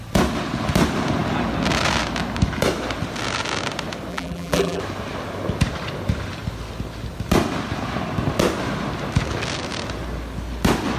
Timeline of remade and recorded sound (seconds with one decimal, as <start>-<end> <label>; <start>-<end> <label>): 0.0-4.1 recorded; 4.1-4.8 remade; 4.8-11.0 recorded